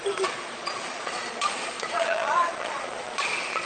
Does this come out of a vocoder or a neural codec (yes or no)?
yes